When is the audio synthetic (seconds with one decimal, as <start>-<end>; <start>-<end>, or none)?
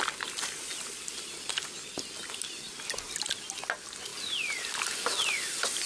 none